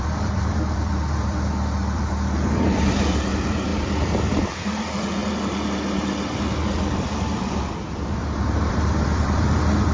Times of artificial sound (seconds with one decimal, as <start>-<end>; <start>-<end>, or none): 0.0-5.2; 6.8-9.9